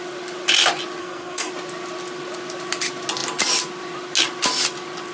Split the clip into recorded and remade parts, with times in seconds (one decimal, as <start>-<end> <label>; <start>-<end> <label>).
0.0-1.0 recorded; 1.0-1.5 remade; 1.5-5.1 recorded